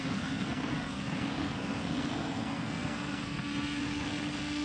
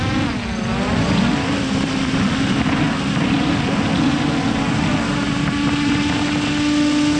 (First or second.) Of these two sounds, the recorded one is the second